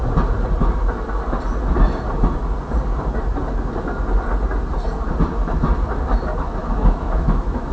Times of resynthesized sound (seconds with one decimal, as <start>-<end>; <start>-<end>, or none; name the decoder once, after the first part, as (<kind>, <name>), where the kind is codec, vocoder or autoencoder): 6.6-7.7 (autoencoder, DAC-VAE)